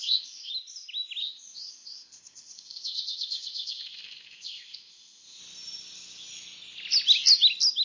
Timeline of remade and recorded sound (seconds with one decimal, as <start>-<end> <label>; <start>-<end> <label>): 0.0-0.5 remade; 0.5-1.2 recorded; 1.2-5.4 remade; 5.4-7.8 recorded